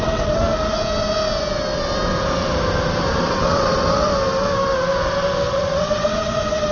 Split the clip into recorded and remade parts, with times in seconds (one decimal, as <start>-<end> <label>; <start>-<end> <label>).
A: 0.0-0.4 remade; 0.4-3.2 recorded; 3.2-4.1 remade; 4.1-5.5 recorded; 5.5-6.7 remade